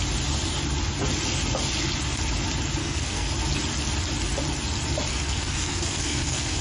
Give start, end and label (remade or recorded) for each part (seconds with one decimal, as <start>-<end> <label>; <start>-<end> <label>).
0.0-2.8 recorded; 2.8-3.3 remade; 3.3-5.1 recorded; 5.1-6.6 remade